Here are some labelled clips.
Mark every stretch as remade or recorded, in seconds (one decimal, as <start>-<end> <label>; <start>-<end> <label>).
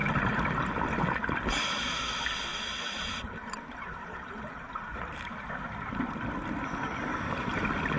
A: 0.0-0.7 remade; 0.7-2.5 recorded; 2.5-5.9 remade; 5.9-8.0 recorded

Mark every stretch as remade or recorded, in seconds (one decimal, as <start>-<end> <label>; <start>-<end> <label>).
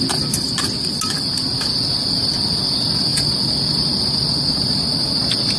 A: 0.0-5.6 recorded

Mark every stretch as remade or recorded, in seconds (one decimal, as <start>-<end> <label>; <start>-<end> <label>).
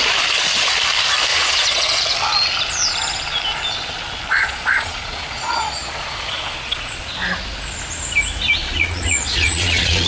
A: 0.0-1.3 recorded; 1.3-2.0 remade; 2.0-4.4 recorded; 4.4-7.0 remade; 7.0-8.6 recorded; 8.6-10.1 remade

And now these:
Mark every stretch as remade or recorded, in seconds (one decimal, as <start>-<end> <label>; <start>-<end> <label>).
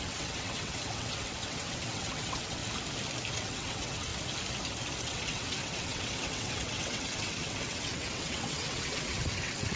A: 0.0-2.6 remade; 2.6-3.3 recorded; 3.3-4.1 remade; 4.1-5.0 recorded; 5.0-9.8 remade